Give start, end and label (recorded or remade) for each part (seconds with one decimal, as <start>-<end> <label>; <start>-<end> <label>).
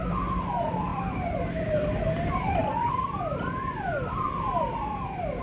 0.0-5.4 remade